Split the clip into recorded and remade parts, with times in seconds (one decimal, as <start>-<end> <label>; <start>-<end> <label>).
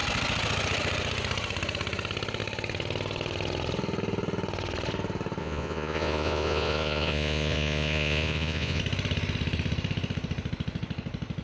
0.0-5.4 recorded; 5.4-8.8 remade; 8.8-11.4 recorded